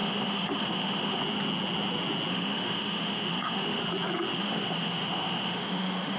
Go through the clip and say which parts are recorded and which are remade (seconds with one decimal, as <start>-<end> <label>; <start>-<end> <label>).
0.0-1.2 remade; 1.2-2.3 recorded; 2.3-3.8 remade; 3.8-4.3 recorded; 4.3-6.2 remade